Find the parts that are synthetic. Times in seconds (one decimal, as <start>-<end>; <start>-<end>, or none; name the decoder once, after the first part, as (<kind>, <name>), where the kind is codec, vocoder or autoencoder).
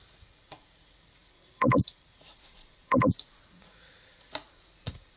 0.0-5.2 (vocoder, Vocos)